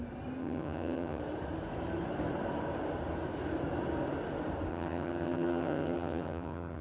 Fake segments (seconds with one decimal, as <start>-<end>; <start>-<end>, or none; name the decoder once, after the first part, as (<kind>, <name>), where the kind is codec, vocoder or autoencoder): 0.4-1.2 (vocoder, HiFi-GAN); 4.7-6.8